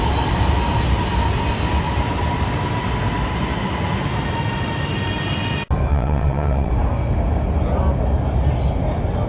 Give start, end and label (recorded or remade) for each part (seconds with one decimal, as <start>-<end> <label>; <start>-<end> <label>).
0.0-5.9 recorded; 5.9-6.7 remade; 6.7-9.3 recorded

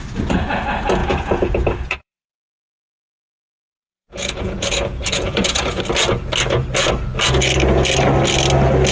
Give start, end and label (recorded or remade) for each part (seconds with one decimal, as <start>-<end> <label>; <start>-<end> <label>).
0.0-1.0 recorded; 1.0-5.8 remade; 5.8-8.9 recorded

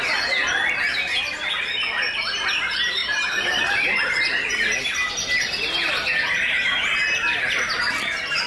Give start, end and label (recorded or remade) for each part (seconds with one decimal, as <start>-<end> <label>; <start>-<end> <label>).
0.0-3.0 recorded; 3.0-4.1 remade; 4.1-8.5 recorded

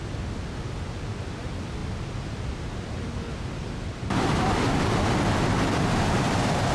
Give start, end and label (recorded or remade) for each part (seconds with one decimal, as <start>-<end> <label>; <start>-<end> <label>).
0.0-6.7 recorded

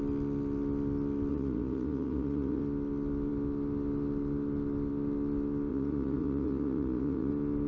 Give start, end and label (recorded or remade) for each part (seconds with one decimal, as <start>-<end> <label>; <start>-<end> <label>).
0.0-1.3 recorded; 1.3-2.6 remade; 2.6-5.7 recorded; 5.7-7.3 remade; 7.3-7.7 recorded

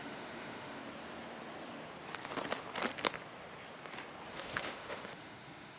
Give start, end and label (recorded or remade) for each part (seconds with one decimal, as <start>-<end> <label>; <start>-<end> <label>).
0.0-0.8 remade; 0.8-4.3 recorded; 4.3-5.8 remade

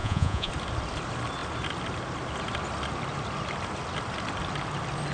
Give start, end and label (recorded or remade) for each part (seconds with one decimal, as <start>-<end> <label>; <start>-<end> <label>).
0.0-0.5 remade; 0.5-5.1 recorded